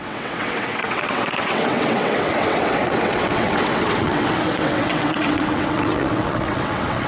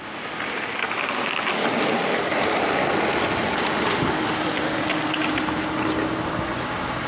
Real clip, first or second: second